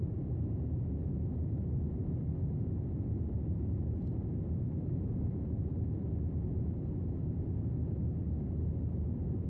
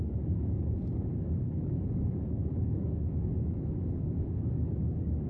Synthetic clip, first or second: second